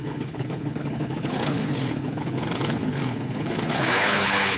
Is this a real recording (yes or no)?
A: no